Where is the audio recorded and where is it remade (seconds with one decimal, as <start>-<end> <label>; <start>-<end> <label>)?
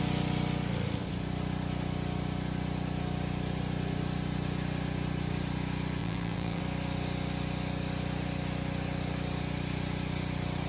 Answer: 0.0-6.0 recorded; 6.0-6.6 remade; 6.6-10.7 recorded